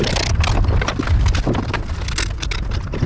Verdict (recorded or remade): recorded